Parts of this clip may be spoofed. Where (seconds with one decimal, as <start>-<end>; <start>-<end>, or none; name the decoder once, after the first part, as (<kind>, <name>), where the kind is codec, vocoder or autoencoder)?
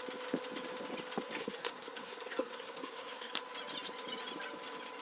1.4-3.3 (codec, SNAC)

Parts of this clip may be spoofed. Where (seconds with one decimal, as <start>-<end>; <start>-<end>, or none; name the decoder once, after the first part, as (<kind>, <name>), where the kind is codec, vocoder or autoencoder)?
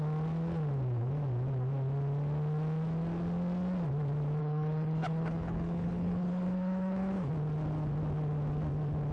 4.4-7.3 (codec, HILCodec)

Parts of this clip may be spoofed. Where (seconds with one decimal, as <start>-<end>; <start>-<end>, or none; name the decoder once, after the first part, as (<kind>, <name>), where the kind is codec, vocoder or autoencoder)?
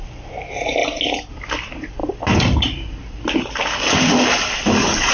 none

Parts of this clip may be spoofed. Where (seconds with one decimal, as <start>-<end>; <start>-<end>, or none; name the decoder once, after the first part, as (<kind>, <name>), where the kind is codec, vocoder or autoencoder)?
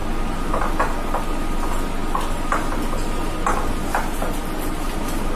none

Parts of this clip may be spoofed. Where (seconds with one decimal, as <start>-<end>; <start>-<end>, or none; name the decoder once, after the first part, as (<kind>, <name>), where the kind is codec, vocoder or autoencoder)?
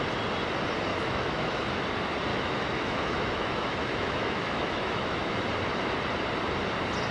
0.9-1.8 (autoencoder, DAC-VAE); 2.3-5.4